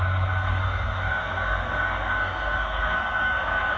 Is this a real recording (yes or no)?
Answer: no